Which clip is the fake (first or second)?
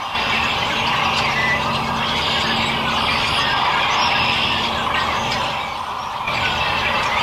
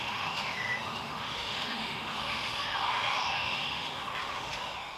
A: second